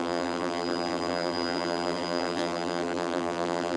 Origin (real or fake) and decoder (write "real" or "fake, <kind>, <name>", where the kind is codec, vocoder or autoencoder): fake, vocoder, BigVGAN v2